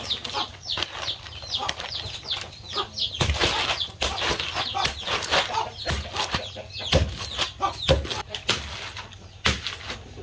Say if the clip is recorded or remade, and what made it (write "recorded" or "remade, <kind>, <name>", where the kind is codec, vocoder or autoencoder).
recorded